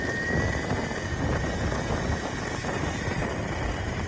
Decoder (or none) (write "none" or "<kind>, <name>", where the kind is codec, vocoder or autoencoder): none